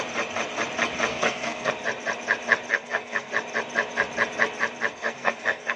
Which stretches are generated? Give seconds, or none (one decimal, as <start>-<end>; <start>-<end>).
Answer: 1.1-1.7; 2.7-3.3; 4.9-5.8